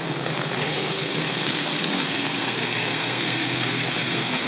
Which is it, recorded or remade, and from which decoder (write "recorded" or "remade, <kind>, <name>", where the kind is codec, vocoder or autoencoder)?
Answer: remade, codec, SNAC